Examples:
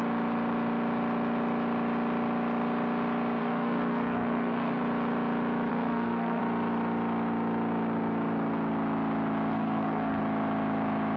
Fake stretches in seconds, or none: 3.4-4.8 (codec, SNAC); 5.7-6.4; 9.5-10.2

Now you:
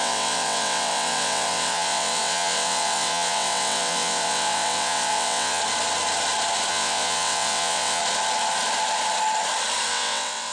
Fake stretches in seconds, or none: 0.0-5.6 (vocoder, WaveNeXt); 6.7-8.0; 9.9-10.5

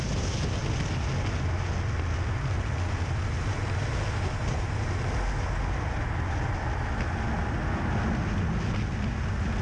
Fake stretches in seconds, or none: none